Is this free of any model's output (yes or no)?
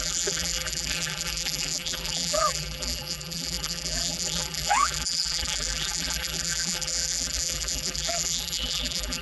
no